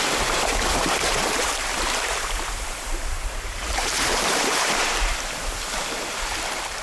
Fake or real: fake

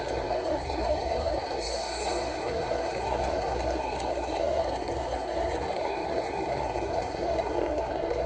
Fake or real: fake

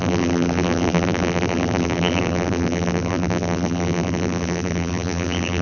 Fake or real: fake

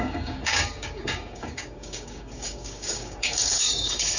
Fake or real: fake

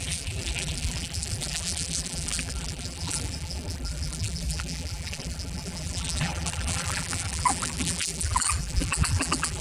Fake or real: fake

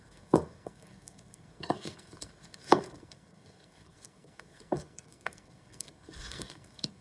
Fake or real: fake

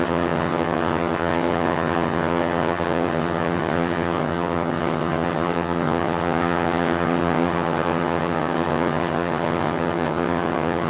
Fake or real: fake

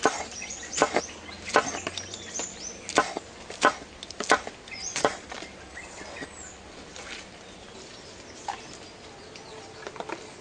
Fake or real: real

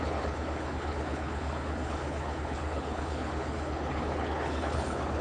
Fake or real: fake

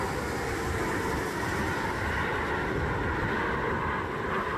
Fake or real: real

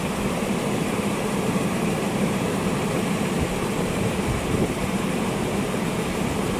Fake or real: fake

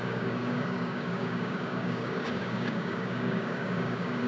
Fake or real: fake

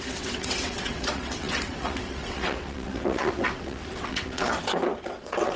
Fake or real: fake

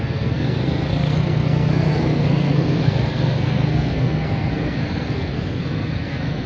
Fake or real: fake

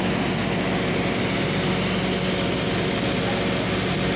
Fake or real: real